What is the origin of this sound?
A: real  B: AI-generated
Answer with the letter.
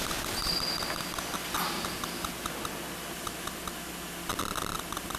A